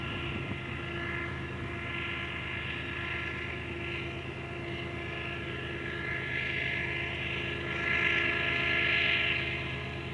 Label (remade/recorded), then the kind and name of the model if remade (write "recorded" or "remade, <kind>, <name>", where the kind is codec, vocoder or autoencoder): recorded